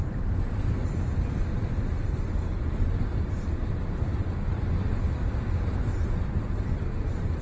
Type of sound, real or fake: real